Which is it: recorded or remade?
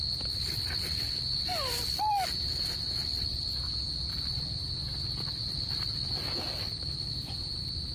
recorded